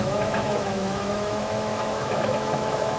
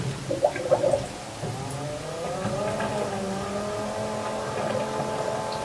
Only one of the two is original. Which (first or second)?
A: second